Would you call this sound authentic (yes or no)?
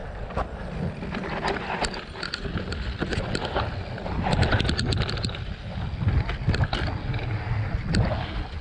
yes